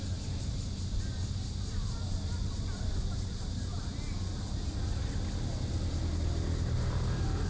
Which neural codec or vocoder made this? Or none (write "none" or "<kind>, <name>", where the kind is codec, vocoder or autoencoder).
none